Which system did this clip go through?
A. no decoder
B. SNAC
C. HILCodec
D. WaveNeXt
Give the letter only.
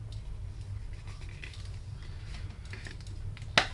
A